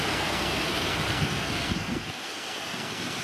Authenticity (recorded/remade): remade